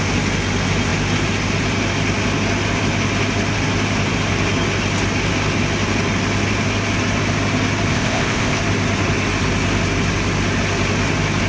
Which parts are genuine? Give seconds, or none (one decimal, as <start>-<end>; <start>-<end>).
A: 0.0-7.9; 8.6-11.5